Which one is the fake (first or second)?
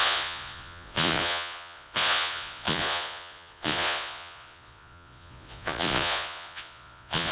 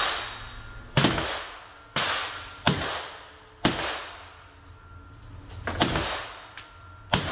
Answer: first